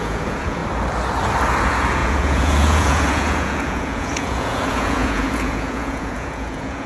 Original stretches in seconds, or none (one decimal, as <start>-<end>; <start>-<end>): 0.6-1.6